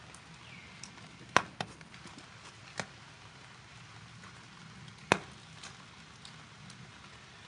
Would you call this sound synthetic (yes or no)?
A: no